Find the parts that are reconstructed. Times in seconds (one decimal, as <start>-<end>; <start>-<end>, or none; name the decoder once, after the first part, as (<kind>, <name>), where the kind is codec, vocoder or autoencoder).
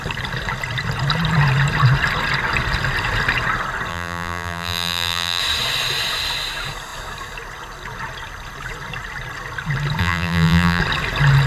3.9-5.4 (vocoder, BigVGAN v2); 10.0-10.8